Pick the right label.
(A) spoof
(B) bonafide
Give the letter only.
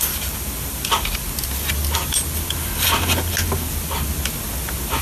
B